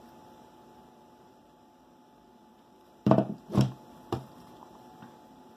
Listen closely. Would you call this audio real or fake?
fake